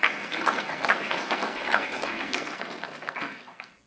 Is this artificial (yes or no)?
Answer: yes